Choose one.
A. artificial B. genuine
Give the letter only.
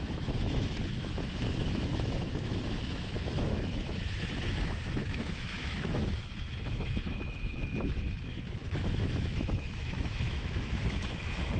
A